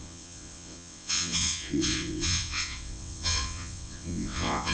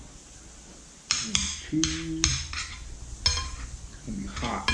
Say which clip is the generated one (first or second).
first